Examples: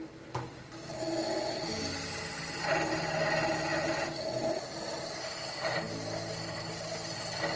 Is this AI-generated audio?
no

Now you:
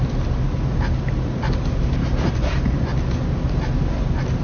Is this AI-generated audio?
no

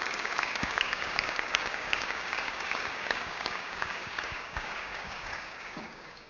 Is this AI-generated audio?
yes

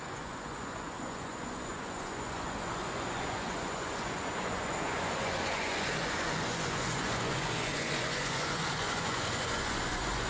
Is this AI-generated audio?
yes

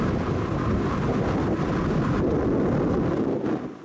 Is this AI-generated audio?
no